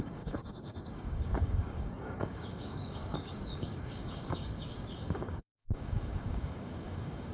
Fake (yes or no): yes